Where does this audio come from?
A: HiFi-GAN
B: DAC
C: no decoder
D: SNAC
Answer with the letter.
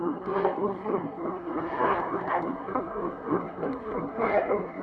D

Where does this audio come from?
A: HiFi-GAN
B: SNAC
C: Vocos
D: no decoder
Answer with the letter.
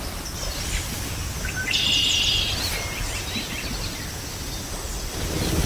D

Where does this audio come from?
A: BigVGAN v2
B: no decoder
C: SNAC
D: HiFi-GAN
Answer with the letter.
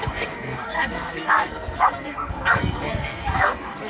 C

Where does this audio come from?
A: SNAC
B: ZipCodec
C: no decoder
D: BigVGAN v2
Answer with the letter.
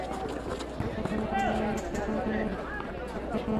C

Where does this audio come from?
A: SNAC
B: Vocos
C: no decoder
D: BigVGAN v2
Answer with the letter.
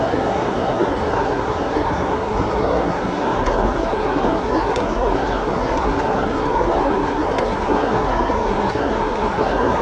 A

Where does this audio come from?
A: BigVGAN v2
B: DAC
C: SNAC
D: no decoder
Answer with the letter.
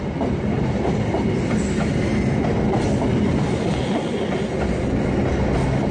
D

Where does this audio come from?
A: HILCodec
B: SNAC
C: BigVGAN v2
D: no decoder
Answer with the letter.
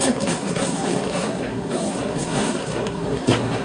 B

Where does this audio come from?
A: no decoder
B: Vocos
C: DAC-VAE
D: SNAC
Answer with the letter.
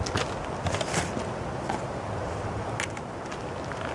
A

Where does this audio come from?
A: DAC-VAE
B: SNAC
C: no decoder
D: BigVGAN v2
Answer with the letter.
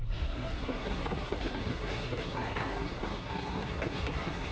B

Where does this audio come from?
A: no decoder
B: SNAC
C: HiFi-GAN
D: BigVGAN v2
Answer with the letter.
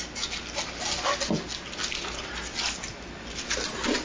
A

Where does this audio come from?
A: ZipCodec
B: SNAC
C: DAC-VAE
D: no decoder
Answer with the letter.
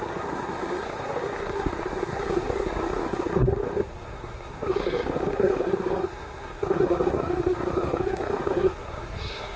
B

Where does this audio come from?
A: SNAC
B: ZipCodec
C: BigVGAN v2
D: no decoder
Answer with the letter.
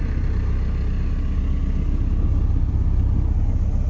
D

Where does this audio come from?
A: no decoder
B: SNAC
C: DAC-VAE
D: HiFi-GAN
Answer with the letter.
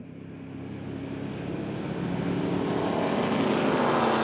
A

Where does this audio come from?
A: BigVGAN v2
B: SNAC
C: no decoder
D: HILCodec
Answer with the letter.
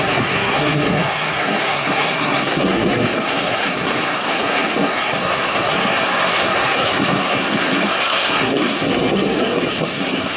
B